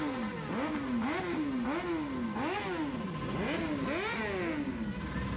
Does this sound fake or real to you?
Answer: real